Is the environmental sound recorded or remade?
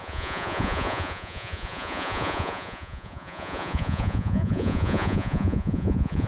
remade